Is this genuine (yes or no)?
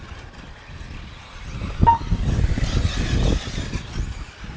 yes